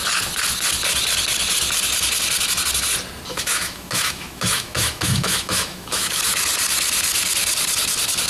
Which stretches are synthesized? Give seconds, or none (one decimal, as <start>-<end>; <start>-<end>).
3.3-6.2